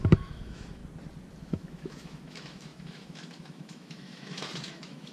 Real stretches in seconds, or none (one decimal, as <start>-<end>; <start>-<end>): 0.8-1.4

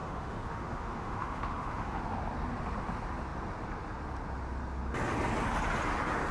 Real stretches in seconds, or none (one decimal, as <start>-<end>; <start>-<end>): 2.0-6.3

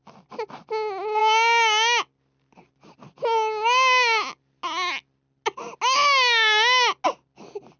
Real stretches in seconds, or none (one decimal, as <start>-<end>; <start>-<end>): 0.0-7.8

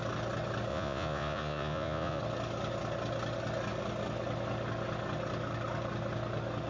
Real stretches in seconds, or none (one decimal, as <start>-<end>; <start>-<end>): 0.0-0.7; 2.2-6.7

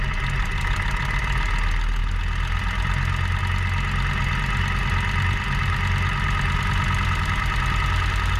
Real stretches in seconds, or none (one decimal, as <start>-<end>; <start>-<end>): 0.0-8.4

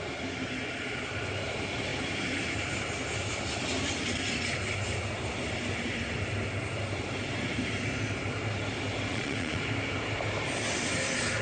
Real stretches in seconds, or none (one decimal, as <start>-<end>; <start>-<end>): 0.0-9.1; 9.6-11.4

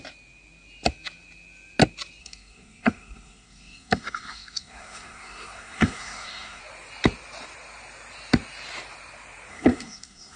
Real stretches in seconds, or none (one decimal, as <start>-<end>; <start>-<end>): 0.0-2.2; 6.6-9.5